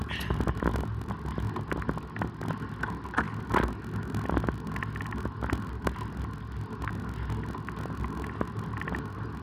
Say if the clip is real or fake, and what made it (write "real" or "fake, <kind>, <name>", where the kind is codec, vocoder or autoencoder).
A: real